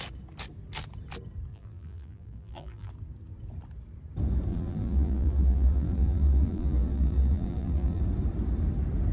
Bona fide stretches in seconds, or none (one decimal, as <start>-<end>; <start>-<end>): 0.0-1.5; 2.9-4.5; 8.0-9.1